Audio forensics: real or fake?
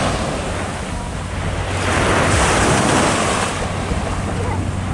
real